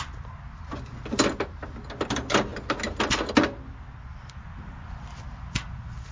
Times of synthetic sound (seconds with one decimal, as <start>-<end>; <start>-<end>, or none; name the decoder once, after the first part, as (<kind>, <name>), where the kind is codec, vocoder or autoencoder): none